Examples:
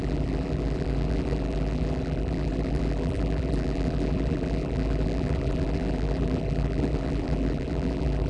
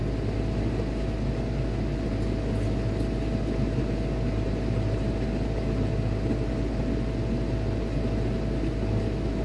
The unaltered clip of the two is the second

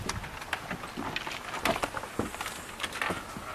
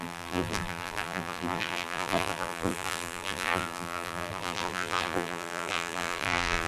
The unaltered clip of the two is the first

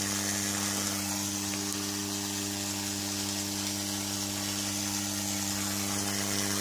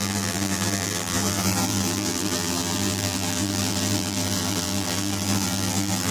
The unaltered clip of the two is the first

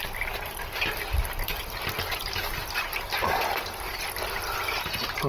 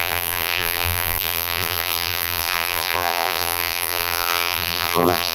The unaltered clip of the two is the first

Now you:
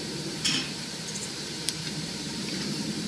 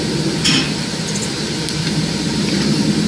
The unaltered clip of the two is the second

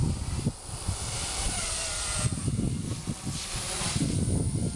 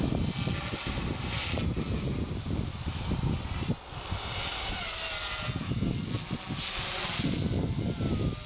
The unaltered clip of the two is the second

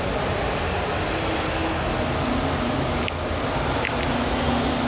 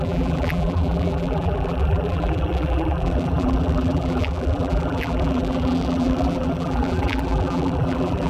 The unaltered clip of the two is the first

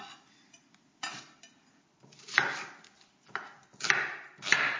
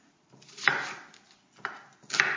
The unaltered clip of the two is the second